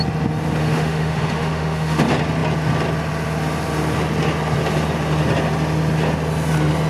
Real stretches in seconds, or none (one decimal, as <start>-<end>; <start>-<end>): 0.0-0.6; 2.0-6.9